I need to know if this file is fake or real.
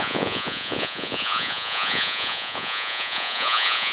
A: fake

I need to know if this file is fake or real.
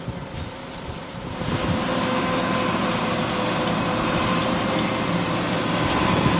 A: real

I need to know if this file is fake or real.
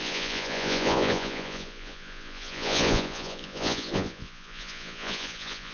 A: fake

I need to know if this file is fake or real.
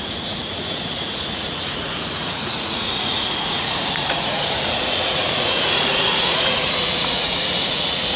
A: fake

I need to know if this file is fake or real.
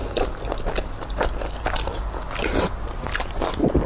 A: real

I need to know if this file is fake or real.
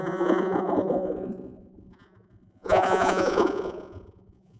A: fake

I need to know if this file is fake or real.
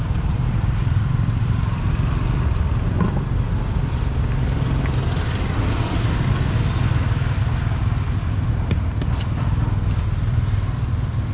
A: real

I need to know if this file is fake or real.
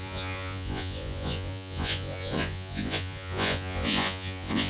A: fake